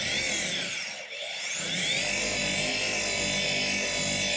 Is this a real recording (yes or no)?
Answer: yes